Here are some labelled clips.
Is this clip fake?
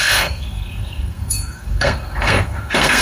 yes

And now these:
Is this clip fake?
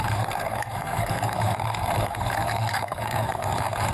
yes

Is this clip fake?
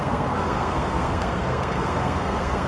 yes